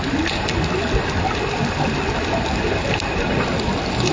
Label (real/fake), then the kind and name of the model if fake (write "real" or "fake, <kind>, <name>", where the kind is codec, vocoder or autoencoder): real